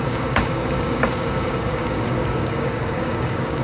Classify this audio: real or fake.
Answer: fake